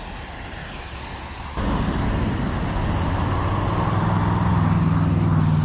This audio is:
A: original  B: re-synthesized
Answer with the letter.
A